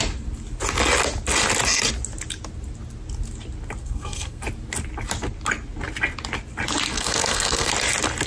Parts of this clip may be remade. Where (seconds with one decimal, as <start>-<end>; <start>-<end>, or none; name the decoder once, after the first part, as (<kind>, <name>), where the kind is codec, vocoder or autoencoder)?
3.8-4.4 (codec, SNAC); 6.9-7.7